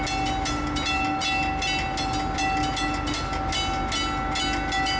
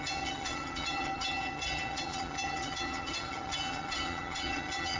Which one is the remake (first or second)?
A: second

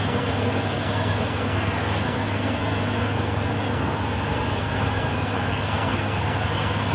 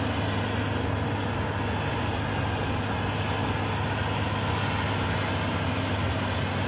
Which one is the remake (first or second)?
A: first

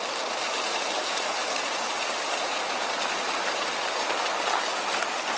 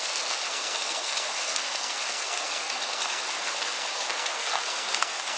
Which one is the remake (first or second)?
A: second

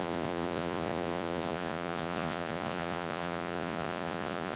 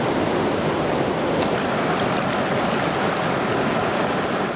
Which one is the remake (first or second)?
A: first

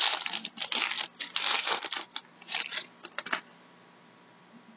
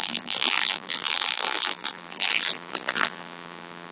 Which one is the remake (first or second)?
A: second